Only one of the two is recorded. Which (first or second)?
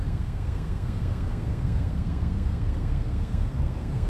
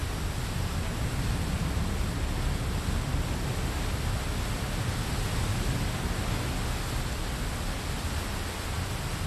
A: second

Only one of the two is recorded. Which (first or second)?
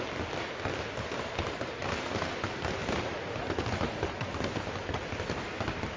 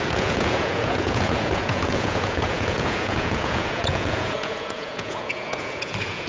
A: first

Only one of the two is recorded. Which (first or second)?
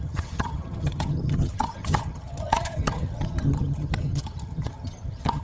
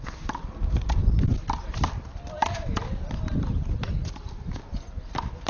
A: second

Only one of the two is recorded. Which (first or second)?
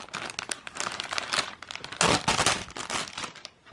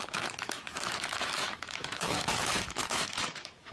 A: first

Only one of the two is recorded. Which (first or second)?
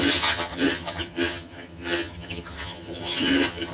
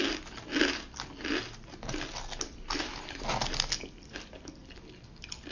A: second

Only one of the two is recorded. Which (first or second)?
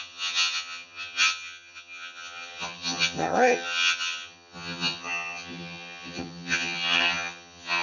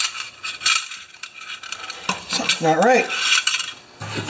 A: second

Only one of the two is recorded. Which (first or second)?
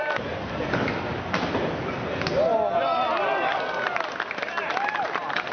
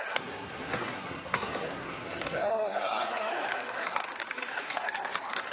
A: first